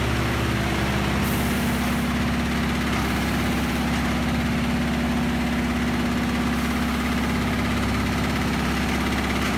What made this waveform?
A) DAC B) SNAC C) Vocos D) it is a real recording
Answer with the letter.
D